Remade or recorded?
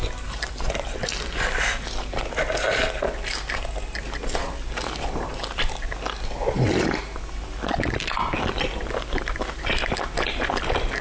recorded